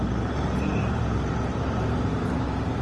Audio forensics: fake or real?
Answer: fake